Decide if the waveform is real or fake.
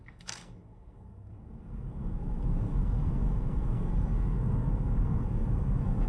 fake